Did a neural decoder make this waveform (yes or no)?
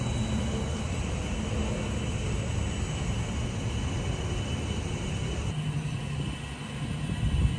no